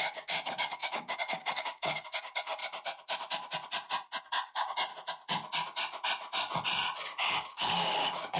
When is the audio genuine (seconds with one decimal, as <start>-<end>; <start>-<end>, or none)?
2.6-4.2; 4.9-7.2